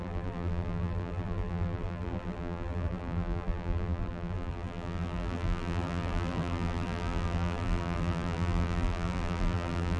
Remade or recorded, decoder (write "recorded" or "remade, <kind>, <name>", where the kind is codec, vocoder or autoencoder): remade, vocoder, BigVGAN v2